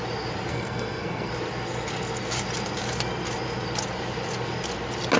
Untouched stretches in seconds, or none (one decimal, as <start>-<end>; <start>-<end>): 0.0-0.5; 1.3-5.2

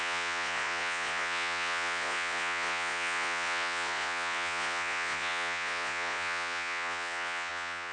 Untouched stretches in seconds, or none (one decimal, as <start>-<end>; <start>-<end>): none

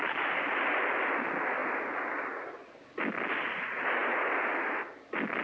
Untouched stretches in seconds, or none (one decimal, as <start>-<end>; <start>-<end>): 0.0-5.4

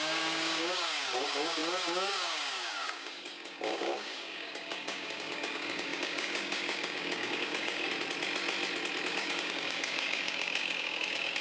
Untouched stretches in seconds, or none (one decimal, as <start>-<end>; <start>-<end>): 7.9-9.1